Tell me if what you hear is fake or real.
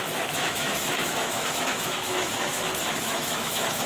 fake